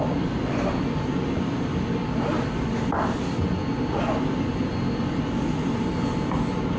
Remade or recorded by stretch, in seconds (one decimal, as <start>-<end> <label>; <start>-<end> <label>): 0.0-6.8 recorded